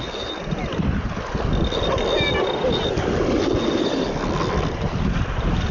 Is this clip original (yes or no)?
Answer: yes